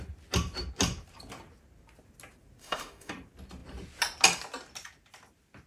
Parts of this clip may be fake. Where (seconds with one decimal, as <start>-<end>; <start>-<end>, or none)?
2.6-3.1